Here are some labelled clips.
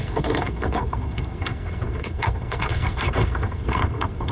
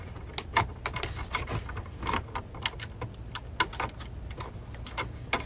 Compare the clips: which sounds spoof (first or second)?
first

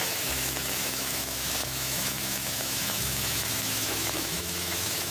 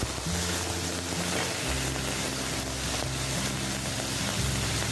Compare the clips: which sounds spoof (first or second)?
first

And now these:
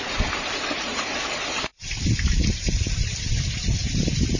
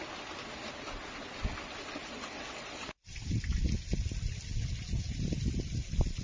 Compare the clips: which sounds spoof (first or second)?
first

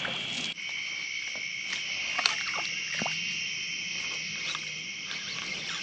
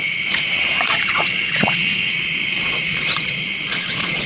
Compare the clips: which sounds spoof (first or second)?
second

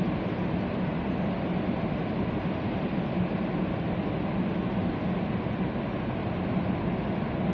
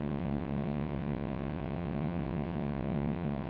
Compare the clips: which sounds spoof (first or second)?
second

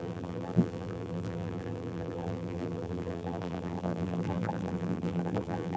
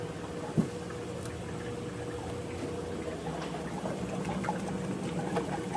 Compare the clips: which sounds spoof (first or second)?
first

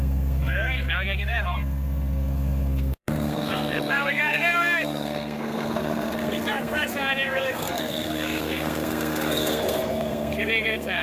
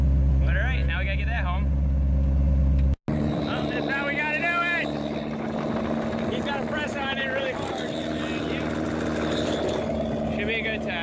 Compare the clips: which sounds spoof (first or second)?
first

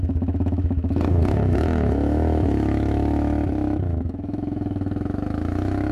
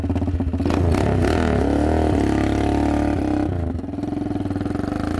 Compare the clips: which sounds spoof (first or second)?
first